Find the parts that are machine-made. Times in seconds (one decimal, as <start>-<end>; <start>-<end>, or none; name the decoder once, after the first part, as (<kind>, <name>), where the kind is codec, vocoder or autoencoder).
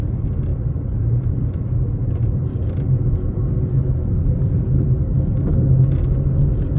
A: 0.5-4.6 (vocoder, BigVGAN v2)